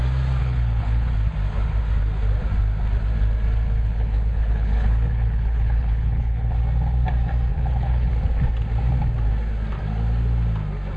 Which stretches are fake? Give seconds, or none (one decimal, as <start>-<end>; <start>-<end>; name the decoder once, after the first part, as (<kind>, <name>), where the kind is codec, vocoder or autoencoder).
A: 0.4-1.1 (codec, HILCodec); 3.8-6.6; 7.5-8.1